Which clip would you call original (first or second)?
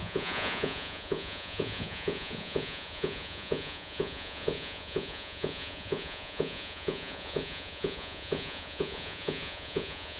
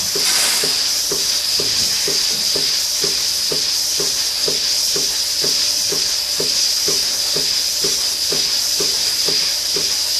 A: second